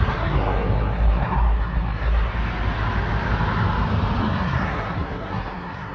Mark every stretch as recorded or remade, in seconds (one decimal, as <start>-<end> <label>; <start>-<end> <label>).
0.0-2.3 remade; 2.3-4.2 recorded; 4.2-5.9 remade